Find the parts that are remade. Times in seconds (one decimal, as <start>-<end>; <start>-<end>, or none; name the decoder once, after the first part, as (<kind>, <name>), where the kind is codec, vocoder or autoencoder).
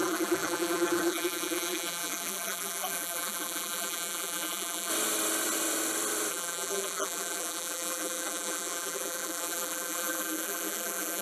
0.0-4.9 (vocoder, BigVGAN v2); 6.3-11.2